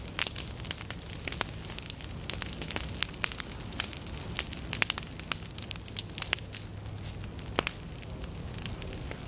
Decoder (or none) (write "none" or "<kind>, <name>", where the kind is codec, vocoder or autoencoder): none